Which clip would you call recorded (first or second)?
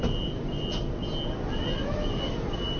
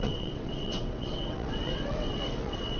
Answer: first